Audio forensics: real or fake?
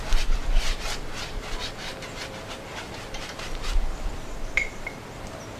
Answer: fake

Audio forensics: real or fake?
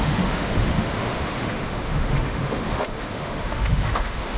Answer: fake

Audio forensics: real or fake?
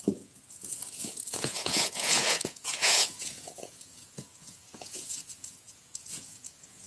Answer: fake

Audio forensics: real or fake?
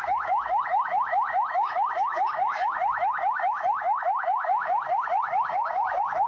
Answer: fake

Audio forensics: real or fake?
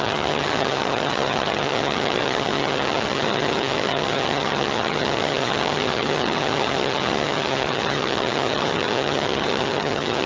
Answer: fake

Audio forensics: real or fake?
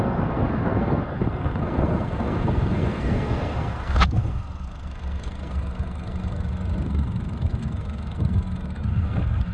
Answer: fake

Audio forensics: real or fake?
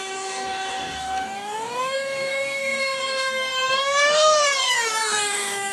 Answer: fake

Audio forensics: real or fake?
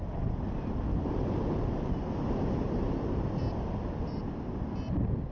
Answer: real